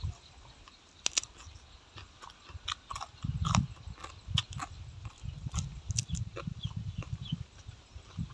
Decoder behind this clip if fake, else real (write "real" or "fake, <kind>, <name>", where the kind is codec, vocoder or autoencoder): real